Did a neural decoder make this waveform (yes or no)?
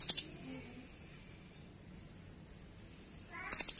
no